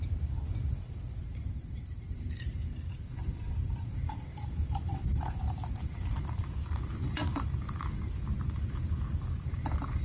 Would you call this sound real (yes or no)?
no